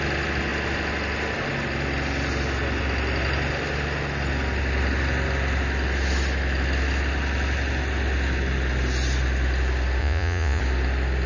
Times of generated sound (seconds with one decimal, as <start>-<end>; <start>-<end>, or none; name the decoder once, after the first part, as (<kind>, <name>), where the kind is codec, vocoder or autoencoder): 10.0-10.6 (vocoder, Vocos)